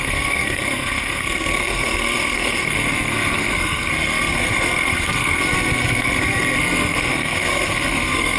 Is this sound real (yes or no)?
no